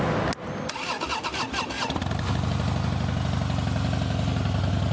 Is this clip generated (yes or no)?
no